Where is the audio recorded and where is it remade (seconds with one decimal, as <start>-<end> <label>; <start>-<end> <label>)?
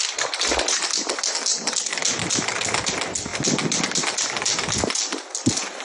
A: 0.0-1.5 recorded; 1.5-2.0 remade; 2.0-5.8 recorded